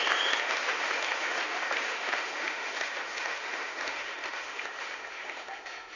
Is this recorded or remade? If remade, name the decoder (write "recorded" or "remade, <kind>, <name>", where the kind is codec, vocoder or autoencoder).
remade, autoencoder, DAC-VAE